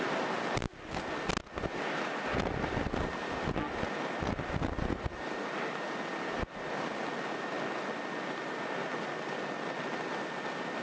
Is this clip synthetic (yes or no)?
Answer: no